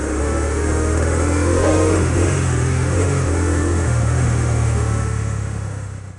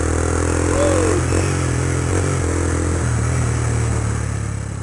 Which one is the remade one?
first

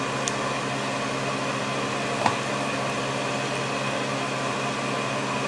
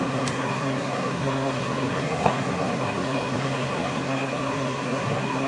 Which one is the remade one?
second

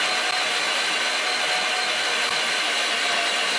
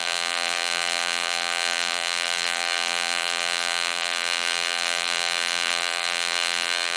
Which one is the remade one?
second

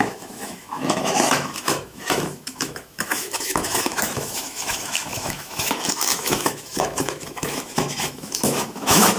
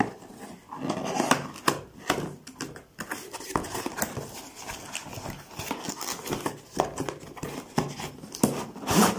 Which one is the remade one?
first